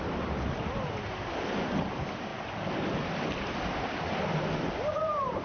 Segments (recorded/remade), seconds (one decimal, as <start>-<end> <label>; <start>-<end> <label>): 0.0-2.3 remade; 2.3-4.7 recorded; 4.7-5.4 remade